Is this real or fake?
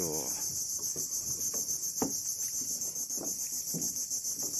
real